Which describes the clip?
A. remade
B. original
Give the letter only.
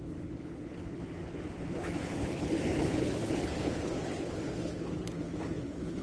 A